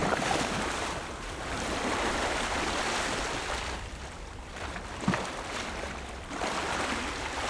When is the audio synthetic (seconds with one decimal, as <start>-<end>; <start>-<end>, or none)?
none